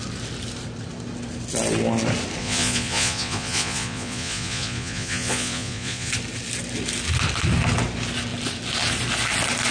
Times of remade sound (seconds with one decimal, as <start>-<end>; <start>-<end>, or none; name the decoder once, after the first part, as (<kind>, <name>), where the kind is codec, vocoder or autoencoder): 2.4-6.1 (vocoder, Vocos)